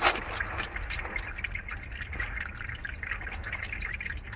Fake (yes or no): yes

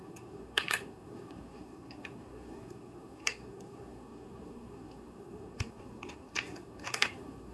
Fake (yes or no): yes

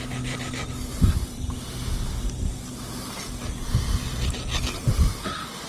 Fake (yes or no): no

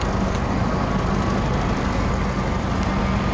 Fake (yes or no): no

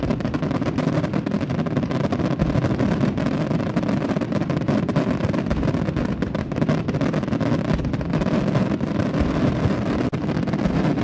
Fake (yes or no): no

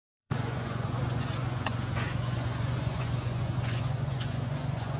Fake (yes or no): yes